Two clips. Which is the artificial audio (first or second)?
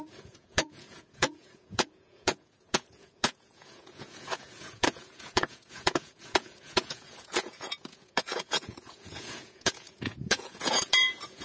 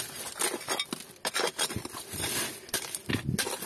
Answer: first